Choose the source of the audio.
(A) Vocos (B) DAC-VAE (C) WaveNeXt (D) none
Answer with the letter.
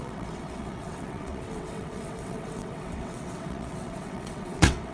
C